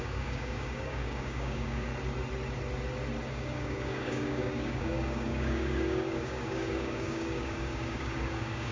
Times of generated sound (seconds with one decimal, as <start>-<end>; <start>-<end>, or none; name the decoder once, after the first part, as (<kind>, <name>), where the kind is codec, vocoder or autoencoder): 0.0-1.9 (codec, DAC); 3.3-8.7